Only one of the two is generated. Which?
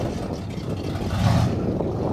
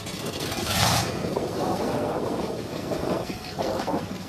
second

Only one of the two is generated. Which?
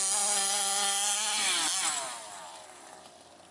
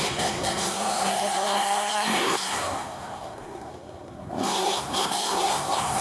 second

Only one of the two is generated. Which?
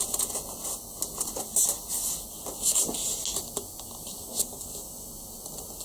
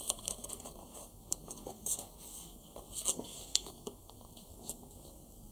second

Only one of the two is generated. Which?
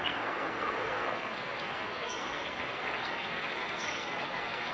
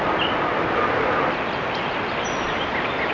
first